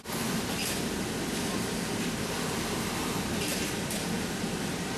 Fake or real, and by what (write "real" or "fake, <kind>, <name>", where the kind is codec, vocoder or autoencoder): real